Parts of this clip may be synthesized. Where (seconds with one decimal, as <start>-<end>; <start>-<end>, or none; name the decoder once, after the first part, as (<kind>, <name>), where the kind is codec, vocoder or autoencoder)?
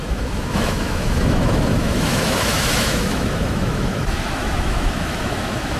0.0-5.8 (autoencoder, DAC-VAE)